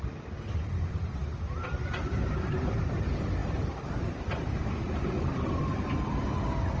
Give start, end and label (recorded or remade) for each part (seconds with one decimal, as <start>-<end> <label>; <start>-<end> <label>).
0.0-6.8 recorded